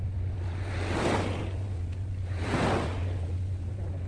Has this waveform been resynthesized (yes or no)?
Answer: no